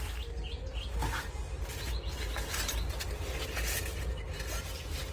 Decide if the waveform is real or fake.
real